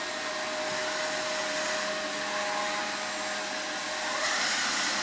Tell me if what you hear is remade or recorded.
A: recorded